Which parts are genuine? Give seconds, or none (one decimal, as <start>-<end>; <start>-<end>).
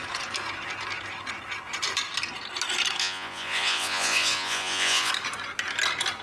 0.0-3.0; 5.1-6.2